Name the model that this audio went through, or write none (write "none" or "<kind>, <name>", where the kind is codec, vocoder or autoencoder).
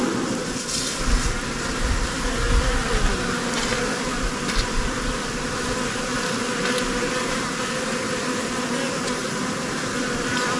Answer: none